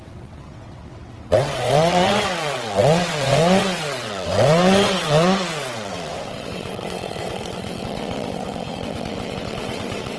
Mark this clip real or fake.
fake